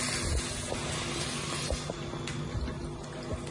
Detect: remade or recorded recorded